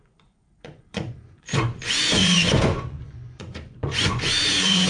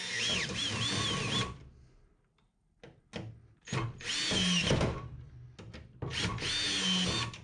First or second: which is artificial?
first